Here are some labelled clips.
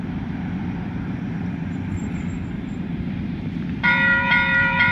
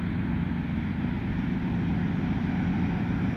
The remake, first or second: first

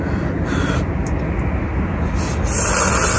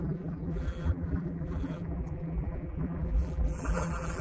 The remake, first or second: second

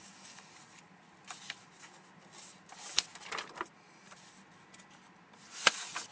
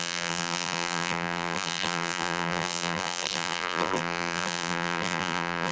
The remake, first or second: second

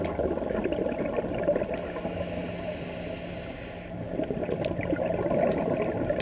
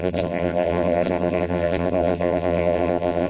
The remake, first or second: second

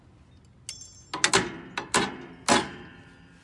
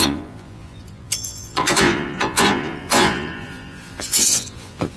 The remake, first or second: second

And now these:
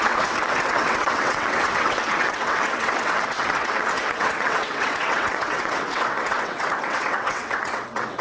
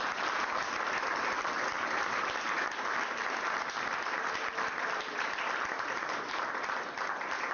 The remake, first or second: first